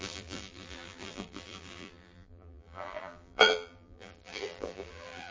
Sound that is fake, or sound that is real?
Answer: fake